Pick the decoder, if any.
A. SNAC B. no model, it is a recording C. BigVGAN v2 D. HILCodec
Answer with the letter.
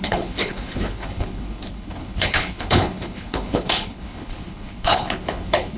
D